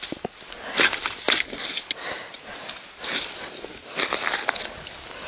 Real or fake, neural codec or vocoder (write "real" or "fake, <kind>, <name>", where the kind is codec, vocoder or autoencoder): real